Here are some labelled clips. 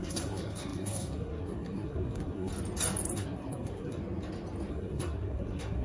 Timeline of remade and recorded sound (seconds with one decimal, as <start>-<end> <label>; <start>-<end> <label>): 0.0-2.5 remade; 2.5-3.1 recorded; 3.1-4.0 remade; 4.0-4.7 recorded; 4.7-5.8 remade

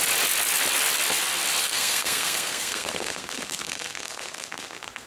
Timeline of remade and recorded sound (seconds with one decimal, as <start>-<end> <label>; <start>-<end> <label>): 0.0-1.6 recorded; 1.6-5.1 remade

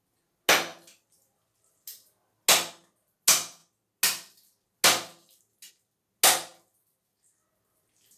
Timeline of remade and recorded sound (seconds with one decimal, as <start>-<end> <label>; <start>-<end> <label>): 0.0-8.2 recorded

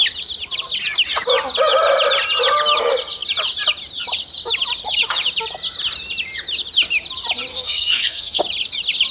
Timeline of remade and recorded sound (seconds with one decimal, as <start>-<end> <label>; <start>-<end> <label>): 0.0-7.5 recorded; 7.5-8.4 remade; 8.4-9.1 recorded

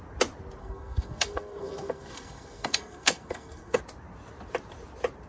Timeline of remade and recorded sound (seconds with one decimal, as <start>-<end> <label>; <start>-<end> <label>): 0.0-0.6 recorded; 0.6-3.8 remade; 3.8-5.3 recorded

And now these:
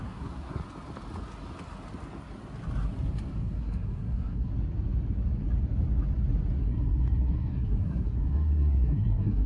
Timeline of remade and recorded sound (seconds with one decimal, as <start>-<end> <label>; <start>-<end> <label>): 0.0-0.6 remade; 0.6-3.4 recorded; 3.4-4.5 remade; 4.5-6.6 recorded; 6.6-9.5 remade

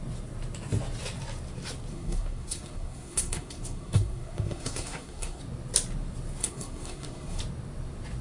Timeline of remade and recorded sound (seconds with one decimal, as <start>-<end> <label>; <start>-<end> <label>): 0.0-1.9 recorded; 1.9-5.4 remade; 5.4-6.4 recorded; 6.4-7.4 remade; 7.4-8.2 recorded

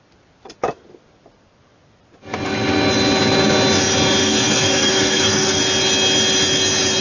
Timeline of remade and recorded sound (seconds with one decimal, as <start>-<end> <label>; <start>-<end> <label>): 0.0-4.2 recorded; 4.2-5.6 remade; 5.6-7.0 recorded